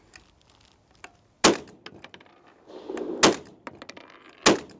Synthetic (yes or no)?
no